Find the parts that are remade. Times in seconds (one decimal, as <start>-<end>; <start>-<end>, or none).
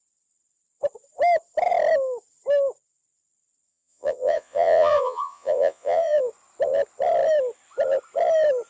3.7-6.2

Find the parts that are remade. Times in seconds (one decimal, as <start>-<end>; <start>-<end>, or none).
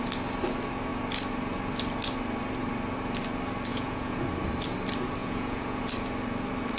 3.7-4.2; 5.2-5.8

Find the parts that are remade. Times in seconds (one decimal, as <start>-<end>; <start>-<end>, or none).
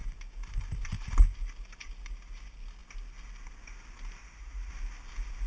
4.2-4.7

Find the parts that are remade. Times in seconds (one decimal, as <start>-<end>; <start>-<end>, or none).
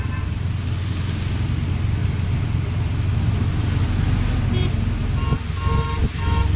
none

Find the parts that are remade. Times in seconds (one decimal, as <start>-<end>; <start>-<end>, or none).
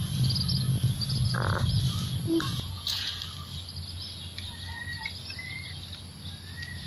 2.5-3.1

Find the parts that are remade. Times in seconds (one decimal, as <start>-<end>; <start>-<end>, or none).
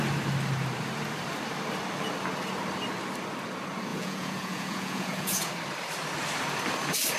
3.9-5.5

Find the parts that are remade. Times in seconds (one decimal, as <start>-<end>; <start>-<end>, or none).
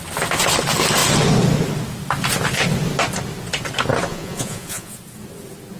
4.1-5.0